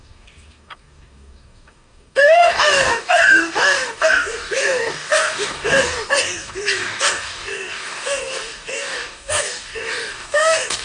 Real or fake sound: fake